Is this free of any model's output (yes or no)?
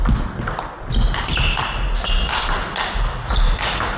yes